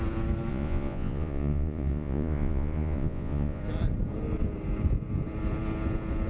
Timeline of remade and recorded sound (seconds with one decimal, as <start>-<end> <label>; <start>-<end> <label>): 0.0-0.5 recorded; 0.5-3.6 remade; 3.6-6.3 recorded